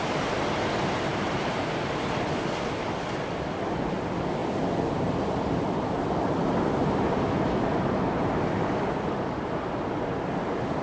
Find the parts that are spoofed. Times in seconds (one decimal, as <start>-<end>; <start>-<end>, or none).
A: 1.1-1.9